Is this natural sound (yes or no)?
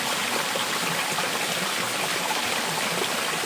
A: yes